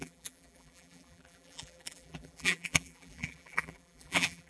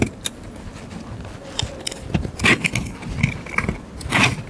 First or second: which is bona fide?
second